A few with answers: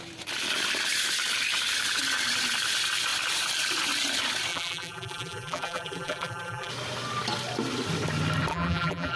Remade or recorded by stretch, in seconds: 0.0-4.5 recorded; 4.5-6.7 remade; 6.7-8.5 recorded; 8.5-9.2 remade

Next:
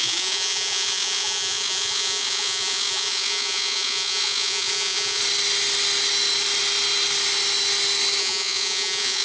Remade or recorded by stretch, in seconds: 0.0-5.2 remade; 5.2-8.2 recorded; 8.2-9.2 remade

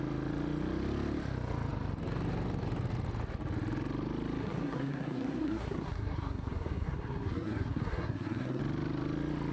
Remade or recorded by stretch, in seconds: 0.0-4.4 recorded; 4.4-8.6 remade; 8.6-9.5 recorded

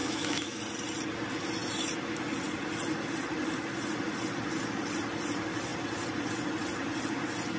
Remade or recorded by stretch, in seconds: 0.0-0.6 remade; 0.6-7.6 recorded

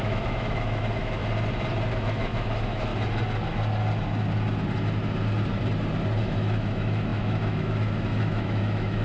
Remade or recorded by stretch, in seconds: 0.0-1.2 remade; 1.2-1.9 recorded; 1.9-2.9 remade; 2.9-6.2 recorded; 6.2-9.0 remade

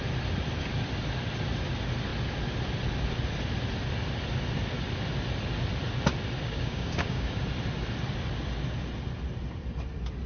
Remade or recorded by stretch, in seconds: 0.0-6.4 recorded; 6.4-7.4 remade; 7.4-10.3 recorded

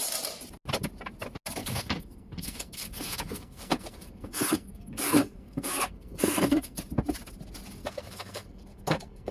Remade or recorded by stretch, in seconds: 0.0-1.6 recorded; 1.6-6.8 remade; 6.8-7.8 recorded; 7.8-9.3 remade